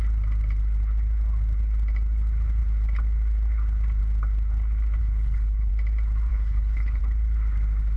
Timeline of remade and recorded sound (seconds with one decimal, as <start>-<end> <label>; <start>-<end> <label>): 0.0-5.0 recorded; 5.0-5.7 remade; 5.7-6.3 recorded; 6.3-7.0 remade; 7.0-8.0 recorded